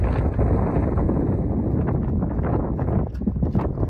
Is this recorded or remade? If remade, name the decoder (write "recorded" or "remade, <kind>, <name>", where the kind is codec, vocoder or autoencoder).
recorded